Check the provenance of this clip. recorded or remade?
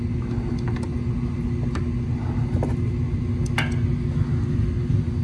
recorded